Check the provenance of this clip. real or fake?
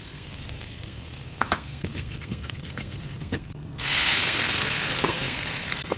fake